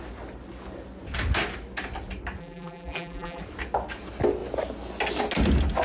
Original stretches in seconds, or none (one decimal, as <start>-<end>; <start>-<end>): 0.0-2.4; 3.4-5.8